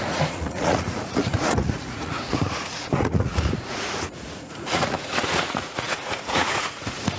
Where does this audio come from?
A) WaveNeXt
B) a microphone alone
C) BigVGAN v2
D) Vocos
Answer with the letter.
D